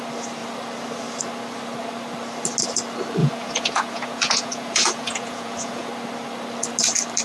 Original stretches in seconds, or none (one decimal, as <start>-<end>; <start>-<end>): 0.0-3.2; 5.9-7.2